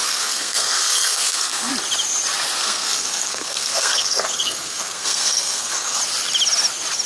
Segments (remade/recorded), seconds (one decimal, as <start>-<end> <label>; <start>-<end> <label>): 0.0-1.7 remade; 1.7-2.6 recorded; 2.6-6.0 remade; 6.0-7.1 recorded